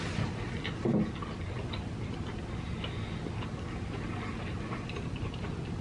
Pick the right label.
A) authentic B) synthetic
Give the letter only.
A